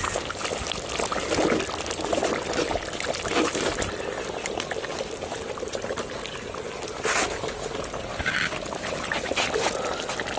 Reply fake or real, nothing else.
real